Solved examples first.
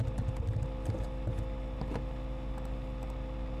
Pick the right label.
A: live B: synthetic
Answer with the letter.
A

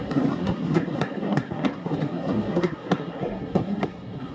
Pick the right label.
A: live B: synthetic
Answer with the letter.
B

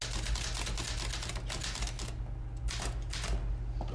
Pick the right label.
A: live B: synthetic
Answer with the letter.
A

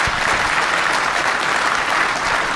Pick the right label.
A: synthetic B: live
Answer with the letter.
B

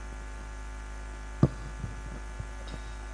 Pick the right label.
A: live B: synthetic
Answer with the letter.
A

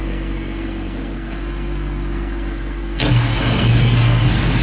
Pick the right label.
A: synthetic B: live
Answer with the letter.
A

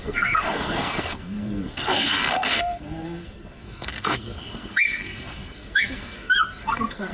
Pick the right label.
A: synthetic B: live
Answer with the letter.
A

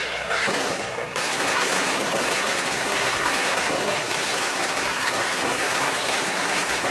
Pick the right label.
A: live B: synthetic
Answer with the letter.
B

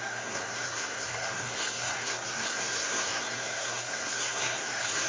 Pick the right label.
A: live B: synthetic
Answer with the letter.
B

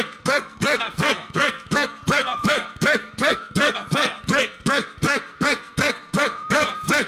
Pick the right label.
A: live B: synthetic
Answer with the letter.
B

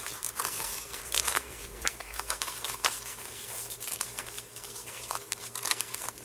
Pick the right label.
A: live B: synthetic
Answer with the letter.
B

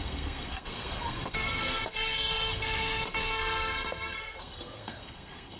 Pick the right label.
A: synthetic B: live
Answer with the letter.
A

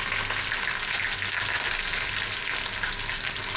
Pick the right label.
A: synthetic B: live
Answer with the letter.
B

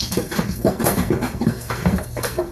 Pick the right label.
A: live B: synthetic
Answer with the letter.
B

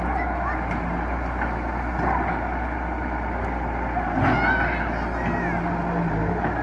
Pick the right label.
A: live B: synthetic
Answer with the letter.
A